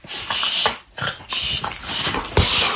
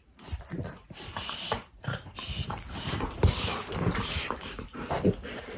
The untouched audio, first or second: first